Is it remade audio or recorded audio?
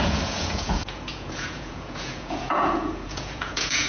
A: remade